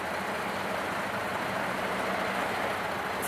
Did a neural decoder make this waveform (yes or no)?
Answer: no